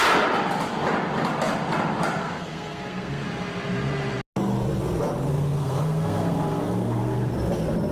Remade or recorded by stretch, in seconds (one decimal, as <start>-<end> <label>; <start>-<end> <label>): 0.0-2.2 recorded; 2.2-3.2 remade; 3.2-5.3 recorded; 5.3-7.3 remade; 7.3-7.9 recorded